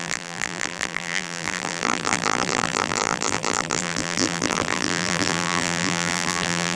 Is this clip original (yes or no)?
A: no